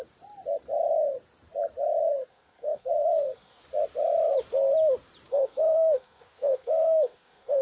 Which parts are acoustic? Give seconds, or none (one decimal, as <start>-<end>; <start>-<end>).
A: 0.0-2.3; 3.6-5.3